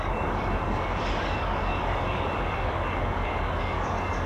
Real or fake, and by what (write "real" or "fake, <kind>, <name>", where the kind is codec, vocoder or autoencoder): fake, codec, DAC